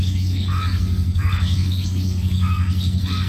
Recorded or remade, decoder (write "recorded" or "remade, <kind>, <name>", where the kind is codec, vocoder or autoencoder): remade, codec, SNAC